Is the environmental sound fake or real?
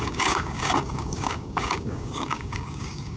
fake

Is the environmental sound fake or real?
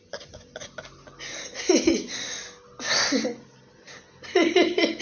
real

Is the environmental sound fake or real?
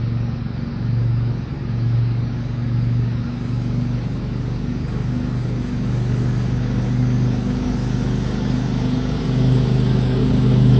fake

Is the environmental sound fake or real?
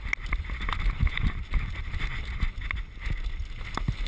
real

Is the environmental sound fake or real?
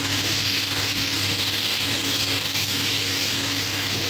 fake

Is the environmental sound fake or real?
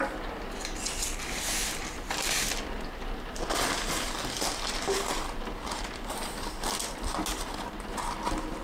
real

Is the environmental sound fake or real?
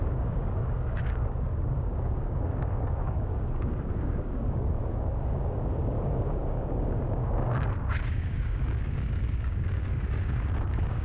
fake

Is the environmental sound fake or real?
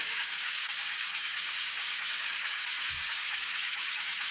fake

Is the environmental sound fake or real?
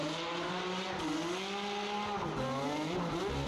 real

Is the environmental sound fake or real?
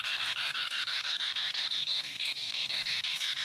fake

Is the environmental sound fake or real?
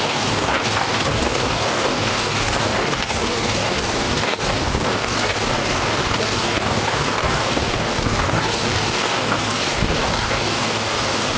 fake